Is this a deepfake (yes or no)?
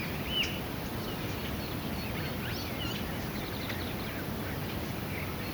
no